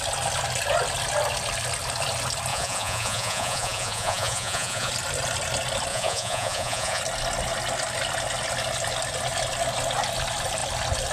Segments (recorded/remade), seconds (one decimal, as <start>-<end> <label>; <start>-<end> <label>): 0.0-2.5 recorded; 2.5-4.9 remade; 4.9-5.9 recorded; 5.9-7.0 remade; 7.0-11.1 recorded